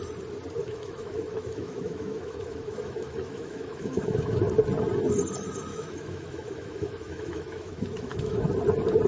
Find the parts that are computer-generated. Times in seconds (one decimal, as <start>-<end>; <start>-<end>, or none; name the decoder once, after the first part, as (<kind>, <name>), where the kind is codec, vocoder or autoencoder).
0.6-4.4 (autoencoder, DAC-VAE); 5.7-8.5